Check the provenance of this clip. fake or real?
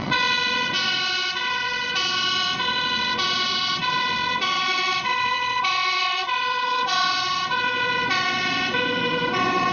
fake